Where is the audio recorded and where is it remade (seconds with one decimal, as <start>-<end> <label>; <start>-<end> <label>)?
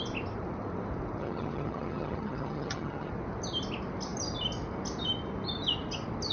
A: 0.0-1.2 recorded; 1.2-3.1 remade; 3.1-6.3 recorded